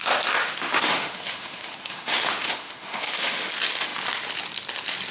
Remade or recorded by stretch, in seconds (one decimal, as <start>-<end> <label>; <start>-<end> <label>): 0.0-0.4 recorded; 0.4-3.5 remade; 3.5-5.1 recorded